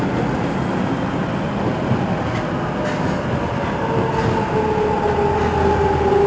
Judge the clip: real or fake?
real